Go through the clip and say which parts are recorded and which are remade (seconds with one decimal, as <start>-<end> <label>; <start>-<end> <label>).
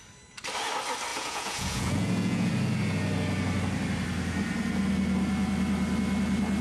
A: 0.0-1.1 recorded; 1.1-2.5 remade; 2.5-6.6 recorded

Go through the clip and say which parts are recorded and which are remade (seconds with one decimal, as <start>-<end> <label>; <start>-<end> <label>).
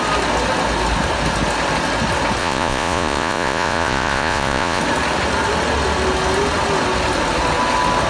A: 0.0-2.4 recorded; 2.4-4.8 remade; 4.8-8.1 recorded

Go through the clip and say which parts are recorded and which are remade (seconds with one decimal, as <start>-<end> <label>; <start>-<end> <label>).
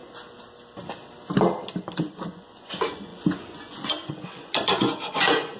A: 0.0-2.0 recorded; 2.0-5.6 remade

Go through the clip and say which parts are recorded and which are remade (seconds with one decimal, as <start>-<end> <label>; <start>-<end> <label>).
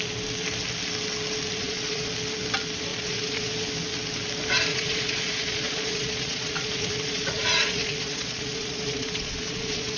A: 0.0-1.6 recorded; 1.6-2.1 remade; 2.1-2.9 recorded; 2.9-3.5 remade; 3.5-4.7 recorded; 4.7-10.0 remade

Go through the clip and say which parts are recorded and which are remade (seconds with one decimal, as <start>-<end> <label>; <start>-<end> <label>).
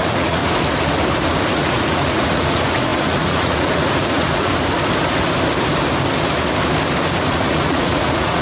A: 0.0-0.4 remade; 0.4-1.5 recorded; 1.5-4.5 remade; 4.5-7.3 recorded; 7.3-8.4 remade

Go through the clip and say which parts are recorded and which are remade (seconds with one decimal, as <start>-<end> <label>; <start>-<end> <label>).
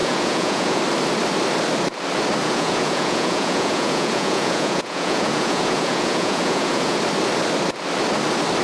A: 0.0-0.8 remade; 0.8-2.4 recorded; 2.4-7.0 remade; 7.0-8.6 recorded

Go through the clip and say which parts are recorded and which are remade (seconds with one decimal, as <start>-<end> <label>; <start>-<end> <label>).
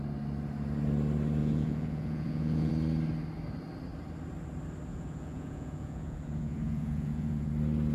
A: 0.0-1.4 recorded; 1.4-2.7 remade; 2.7-4.9 recorded; 4.9-7.5 remade; 7.5-7.9 recorded